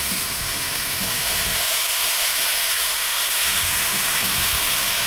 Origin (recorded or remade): remade